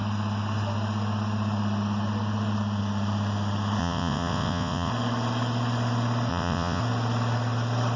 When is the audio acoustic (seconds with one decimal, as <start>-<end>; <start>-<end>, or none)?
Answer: 0.0-3.8; 4.9-6.3; 6.8-8.0